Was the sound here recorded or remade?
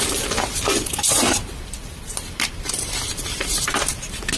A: remade